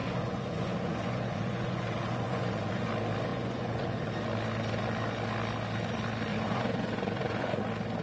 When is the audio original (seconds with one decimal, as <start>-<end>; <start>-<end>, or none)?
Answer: 2.9-3.3; 4.1-6.3; 7.6-8.0